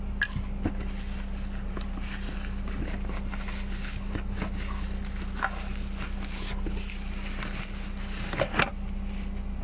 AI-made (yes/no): no